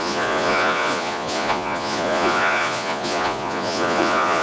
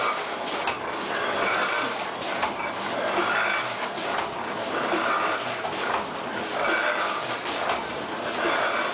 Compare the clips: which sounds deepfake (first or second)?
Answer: first